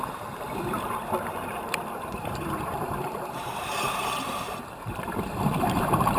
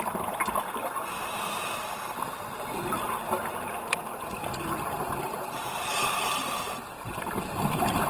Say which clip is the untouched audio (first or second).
second